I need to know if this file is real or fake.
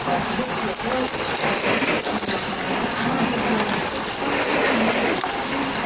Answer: real